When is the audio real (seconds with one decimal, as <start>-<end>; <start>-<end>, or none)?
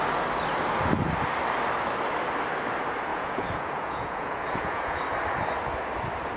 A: 0.0-3.1; 5.0-6.4